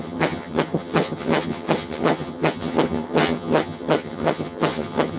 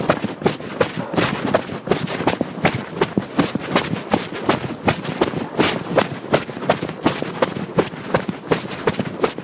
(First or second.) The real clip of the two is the second